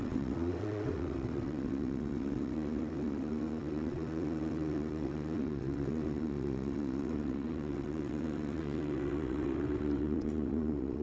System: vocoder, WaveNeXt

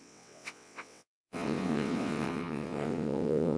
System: vocoder, WaveNeXt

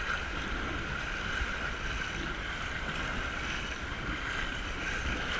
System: none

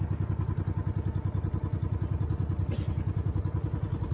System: none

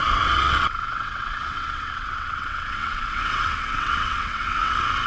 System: vocoder, WaveNeXt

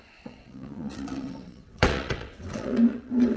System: vocoder, WaveNeXt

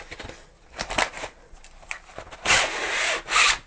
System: none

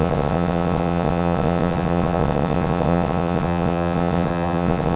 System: vocoder, WaveNeXt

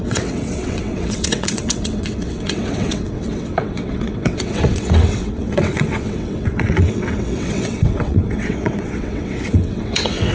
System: vocoder, WaveNeXt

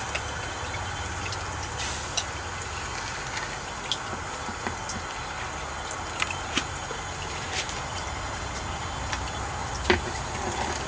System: none